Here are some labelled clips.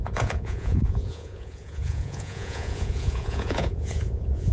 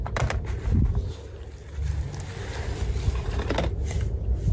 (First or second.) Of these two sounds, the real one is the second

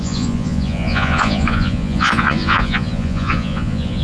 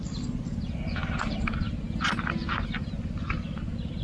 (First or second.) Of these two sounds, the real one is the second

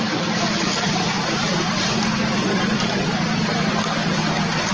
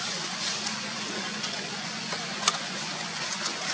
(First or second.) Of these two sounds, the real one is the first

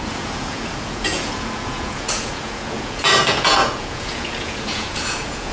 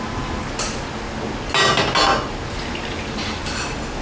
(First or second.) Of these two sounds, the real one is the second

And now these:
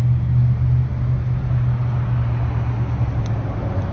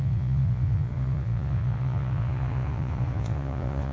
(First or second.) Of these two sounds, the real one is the first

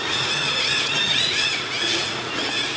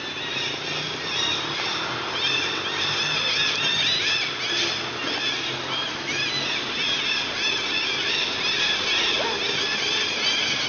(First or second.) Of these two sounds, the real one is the second